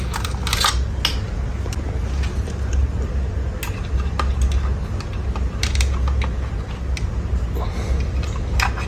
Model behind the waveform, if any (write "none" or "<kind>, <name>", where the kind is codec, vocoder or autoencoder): none